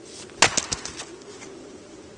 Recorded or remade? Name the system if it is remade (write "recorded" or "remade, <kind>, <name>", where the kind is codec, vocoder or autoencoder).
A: recorded